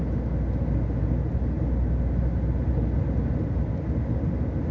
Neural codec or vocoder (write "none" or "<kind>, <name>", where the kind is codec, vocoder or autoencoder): none